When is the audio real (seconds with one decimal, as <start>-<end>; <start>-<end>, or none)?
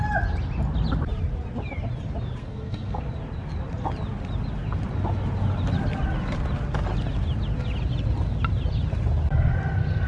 0.0-2.4; 3.0-10.1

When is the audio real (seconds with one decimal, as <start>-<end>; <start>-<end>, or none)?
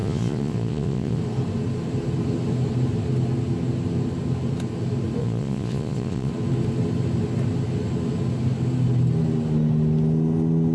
1.2-5.2; 6.3-10.7